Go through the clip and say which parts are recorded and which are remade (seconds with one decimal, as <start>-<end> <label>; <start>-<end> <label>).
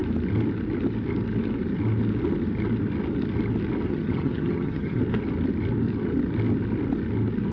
0.0-3.9 recorded; 3.9-5.0 remade; 5.0-7.5 recorded